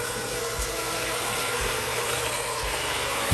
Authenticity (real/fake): fake